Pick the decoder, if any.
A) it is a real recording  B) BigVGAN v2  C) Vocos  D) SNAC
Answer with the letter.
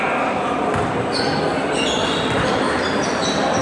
A